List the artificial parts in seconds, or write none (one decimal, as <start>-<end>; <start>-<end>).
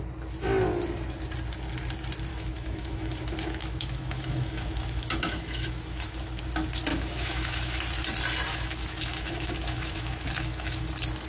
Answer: 2.3-6.4; 6.9-7.8; 8.5-10.9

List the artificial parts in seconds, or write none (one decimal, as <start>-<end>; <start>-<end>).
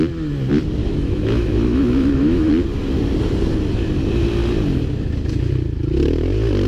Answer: 0.8-2.5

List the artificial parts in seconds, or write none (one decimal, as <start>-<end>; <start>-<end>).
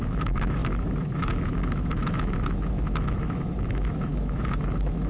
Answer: 0.0-5.1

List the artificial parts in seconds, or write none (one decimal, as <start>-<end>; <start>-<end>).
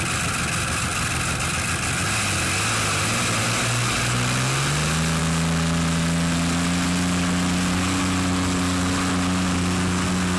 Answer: none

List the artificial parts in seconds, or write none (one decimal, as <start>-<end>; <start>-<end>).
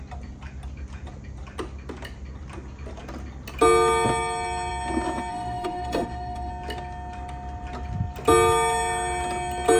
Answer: 5.3-6.5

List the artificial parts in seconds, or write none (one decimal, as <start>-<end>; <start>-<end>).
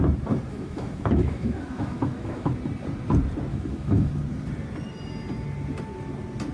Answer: 0.5-2.5; 3.5-4.1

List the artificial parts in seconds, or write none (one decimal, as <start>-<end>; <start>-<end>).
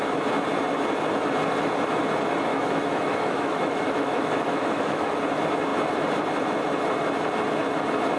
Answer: 2.5-5.1